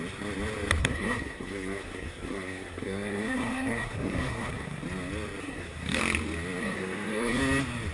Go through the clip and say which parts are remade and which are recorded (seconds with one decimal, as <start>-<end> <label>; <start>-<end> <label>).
0.0-0.8 recorded; 0.8-4.8 remade; 4.8-5.4 recorded; 5.4-6.0 remade; 6.0-6.6 recorded; 6.6-7.4 remade; 7.4-7.9 recorded